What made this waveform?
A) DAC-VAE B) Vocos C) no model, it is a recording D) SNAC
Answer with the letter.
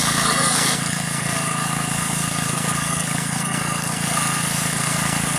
D